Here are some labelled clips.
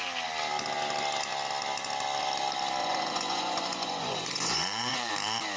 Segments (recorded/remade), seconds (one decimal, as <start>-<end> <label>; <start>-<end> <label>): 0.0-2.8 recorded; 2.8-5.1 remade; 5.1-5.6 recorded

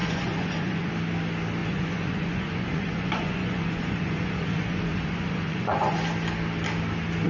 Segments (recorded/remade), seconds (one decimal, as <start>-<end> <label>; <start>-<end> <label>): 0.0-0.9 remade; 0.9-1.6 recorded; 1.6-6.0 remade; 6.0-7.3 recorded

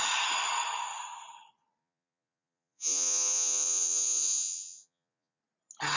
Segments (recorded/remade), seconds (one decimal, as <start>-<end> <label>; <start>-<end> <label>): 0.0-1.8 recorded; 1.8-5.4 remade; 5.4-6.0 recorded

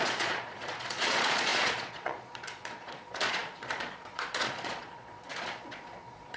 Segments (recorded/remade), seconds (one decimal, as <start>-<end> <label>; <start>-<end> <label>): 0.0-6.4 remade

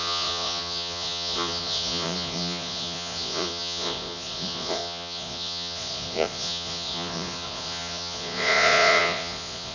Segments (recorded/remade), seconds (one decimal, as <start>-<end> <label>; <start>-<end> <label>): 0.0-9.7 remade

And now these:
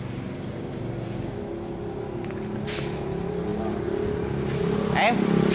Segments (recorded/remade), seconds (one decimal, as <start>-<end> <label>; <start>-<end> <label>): 0.0-5.5 recorded

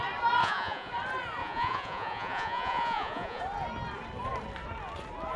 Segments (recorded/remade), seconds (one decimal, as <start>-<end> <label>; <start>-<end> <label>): 0.0-0.4 recorded; 0.4-0.9 remade; 0.9-1.4 recorded; 1.4-3.4 remade; 3.4-5.4 recorded

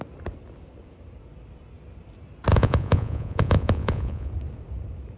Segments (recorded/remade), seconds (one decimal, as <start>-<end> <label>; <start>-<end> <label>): 0.0-2.5 recorded; 2.5-4.3 remade; 4.3-5.2 recorded